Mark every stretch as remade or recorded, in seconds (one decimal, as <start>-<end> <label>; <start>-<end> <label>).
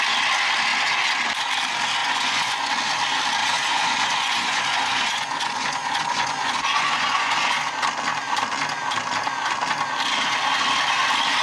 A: 0.0-2.0 recorded; 2.0-2.7 remade; 2.7-3.4 recorded; 3.4-7.7 remade; 7.7-11.4 recorded